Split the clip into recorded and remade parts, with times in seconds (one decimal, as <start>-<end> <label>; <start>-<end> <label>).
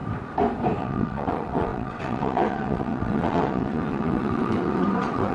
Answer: 0.0-0.8 recorded; 0.8-5.3 remade